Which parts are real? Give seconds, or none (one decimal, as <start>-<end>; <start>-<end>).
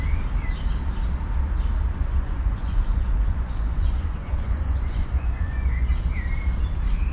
0.0-1.9; 5.9-7.1